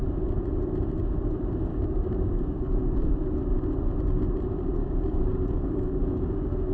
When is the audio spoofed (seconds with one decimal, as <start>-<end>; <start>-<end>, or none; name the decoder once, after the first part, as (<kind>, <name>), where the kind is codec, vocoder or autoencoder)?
1.7-2.8 (codec, DAC); 4.8-6.7

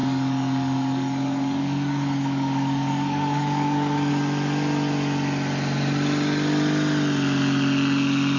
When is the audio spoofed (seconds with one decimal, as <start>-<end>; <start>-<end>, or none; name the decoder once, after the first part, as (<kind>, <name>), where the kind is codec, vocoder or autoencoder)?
0.0-4.1 (codec, DAC)

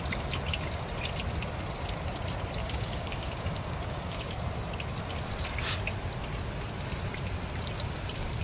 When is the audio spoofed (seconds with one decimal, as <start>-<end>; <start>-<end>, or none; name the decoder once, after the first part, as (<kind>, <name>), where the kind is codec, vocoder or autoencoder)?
2.6-4.3 (codec, DAC)

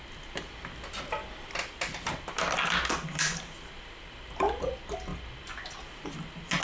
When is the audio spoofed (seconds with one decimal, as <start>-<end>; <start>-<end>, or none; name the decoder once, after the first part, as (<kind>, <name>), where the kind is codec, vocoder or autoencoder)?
none

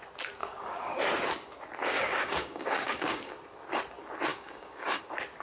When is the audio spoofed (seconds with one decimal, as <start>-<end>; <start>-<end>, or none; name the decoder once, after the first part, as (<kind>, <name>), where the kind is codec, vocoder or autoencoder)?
0.4-1.0 (codec, DAC); 1.8-3.3; 4.3-5.0

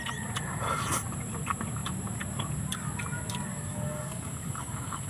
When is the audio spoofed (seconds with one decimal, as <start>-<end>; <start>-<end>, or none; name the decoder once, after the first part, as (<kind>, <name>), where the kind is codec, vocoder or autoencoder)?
3.7-5.1 (codec, DAC)

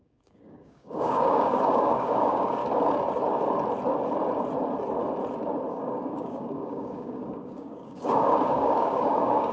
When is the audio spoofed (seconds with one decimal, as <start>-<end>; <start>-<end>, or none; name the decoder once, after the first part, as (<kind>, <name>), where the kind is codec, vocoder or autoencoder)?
0.0-2.6 (codec, DAC); 5.7-9.5